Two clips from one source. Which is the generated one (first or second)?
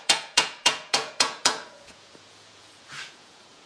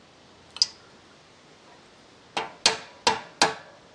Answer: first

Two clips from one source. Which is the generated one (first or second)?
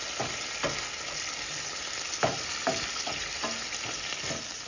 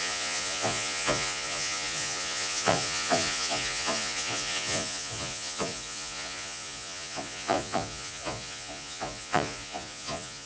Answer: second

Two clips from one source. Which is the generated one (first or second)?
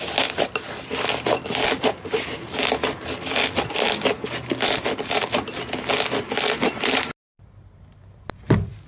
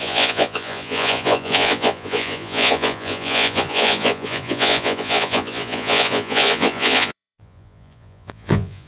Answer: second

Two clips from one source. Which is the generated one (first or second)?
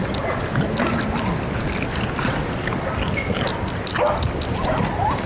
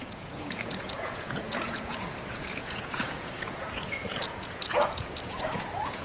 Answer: second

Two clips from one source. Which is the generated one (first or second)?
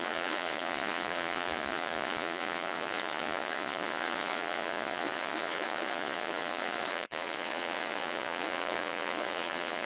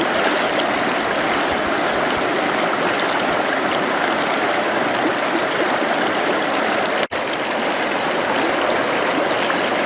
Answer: first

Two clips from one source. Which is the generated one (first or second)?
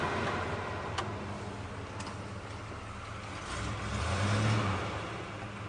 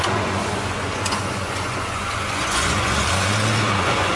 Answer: second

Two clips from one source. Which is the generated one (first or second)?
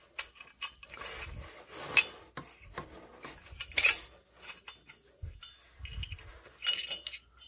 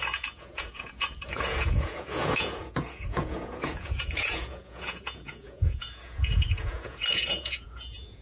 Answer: second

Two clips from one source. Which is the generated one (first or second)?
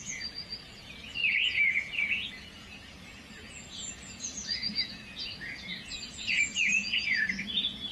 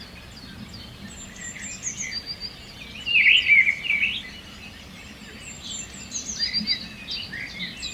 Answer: first